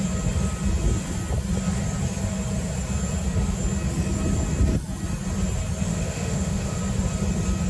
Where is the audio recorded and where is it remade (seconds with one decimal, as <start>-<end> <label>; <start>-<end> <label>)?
0.0-5.9 recorded; 5.9-6.8 remade; 6.8-7.7 recorded